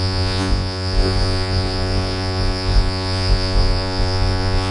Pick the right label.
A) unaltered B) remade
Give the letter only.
B